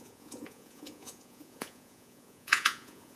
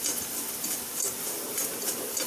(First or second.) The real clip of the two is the second